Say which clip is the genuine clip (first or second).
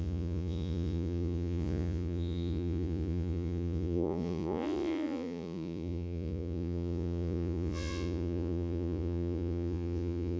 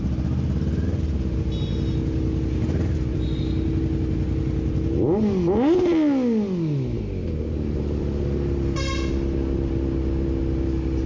second